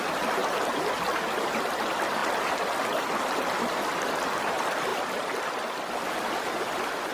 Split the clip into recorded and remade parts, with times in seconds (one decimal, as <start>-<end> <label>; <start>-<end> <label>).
0.0-2.2 remade; 2.2-3.2 recorded; 3.2-4.9 remade; 4.9-5.9 recorded; 5.9-7.1 remade